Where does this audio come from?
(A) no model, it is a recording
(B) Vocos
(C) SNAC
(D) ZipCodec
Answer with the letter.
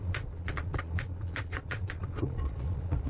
B